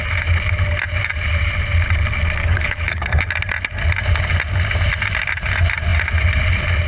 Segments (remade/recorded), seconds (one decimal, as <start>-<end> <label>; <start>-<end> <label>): 0.0-2.4 recorded; 2.4-3.1 remade; 3.1-6.9 recorded